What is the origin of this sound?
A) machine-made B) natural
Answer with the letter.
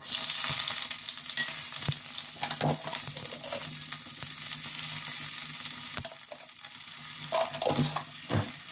B